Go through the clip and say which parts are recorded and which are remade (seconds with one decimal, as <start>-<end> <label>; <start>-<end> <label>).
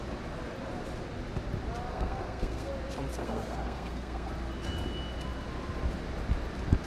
0.0-1.9 recorded; 1.9-2.7 remade; 2.7-3.1 recorded; 3.1-4.3 remade; 4.3-6.9 recorded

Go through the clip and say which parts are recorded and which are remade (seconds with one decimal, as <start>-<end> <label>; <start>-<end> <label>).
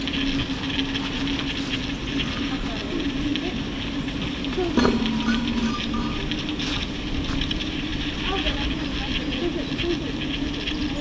0.0-11.0 recorded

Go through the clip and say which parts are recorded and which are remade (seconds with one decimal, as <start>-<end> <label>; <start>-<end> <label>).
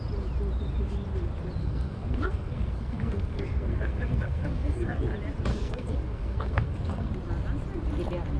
0.0-1.6 recorded; 1.6-5.0 remade; 5.0-5.5 recorded; 5.5-7.1 remade; 7.1-8.4 recorded